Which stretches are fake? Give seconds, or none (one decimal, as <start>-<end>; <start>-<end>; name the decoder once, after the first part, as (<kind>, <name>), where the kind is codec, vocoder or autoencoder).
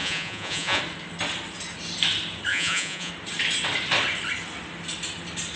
0.0-0.8 (vocoder, Vocos); 2.5-3.1